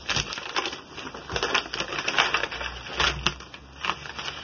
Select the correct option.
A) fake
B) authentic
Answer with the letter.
B